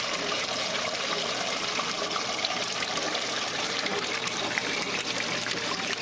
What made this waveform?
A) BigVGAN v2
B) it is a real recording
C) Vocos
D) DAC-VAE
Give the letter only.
A